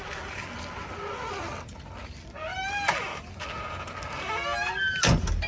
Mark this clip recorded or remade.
recorded